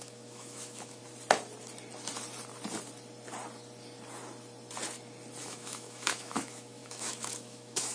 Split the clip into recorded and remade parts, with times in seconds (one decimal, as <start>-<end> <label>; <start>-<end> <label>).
0.0-1.0 remade; 1.0-5.4 recorded; 5.4-7.9 remade